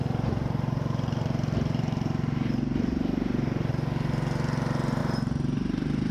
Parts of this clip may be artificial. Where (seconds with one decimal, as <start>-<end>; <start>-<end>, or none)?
0.0-3.7; 5.0-6.1